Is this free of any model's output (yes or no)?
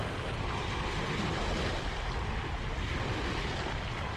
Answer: yes